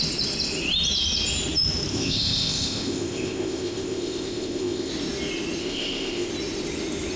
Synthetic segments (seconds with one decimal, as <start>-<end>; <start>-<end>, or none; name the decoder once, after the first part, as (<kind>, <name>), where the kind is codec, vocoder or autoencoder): 1.9-4.9 (codec, ZipCodec); 5.6-6.3